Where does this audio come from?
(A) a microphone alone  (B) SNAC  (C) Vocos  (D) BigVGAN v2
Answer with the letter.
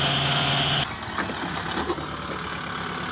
A